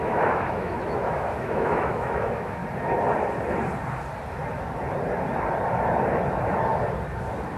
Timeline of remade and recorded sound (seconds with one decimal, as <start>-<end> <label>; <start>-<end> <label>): 0.0-2.6 remade; 2.6-7.6 recorded